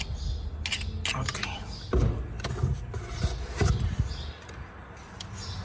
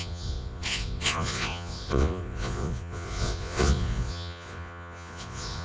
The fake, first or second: second